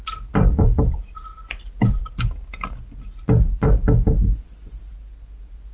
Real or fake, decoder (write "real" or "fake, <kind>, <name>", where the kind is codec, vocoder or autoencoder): real